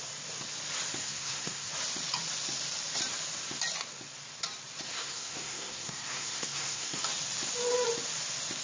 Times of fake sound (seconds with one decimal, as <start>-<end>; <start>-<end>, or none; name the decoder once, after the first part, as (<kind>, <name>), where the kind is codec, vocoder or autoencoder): 1.0-1.7 (codec, SNAC); 4.9-7.0